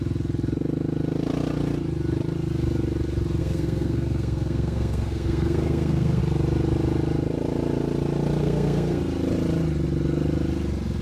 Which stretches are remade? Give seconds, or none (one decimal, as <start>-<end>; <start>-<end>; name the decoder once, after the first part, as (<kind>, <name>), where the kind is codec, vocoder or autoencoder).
3.4-6.2 (codec, SNAC); 8.4-9.0